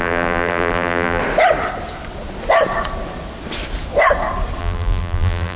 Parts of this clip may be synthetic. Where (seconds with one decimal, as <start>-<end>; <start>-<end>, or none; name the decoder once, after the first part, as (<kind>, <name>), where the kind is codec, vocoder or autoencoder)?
0.0-1.2 (vocoder, BigVGAN v2); 4.6-5.6